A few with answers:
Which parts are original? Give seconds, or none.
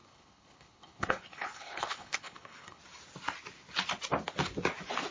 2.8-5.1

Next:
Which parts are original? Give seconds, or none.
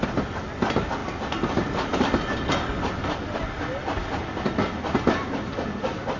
0.0-6.2